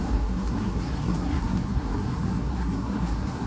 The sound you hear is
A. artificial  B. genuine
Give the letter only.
A